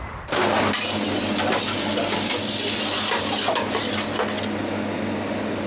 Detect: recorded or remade recorded